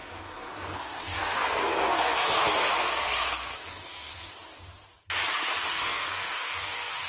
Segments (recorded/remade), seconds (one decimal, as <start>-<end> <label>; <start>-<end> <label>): 0.0-4.3 remade; 4.3-5.7 recorded; 5.7-7.1 remade